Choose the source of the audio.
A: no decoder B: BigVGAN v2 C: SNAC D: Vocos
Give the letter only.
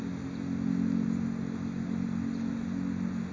A